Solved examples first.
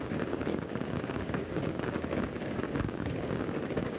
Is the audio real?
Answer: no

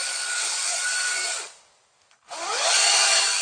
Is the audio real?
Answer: no